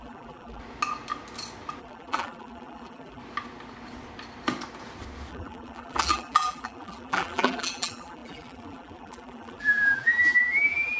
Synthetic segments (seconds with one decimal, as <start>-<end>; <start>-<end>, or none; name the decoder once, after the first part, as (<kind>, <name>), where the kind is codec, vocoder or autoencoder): 0.0-0.6 (vocoder, BigVGAN v2); 1.8-3.2; 5.3-11.0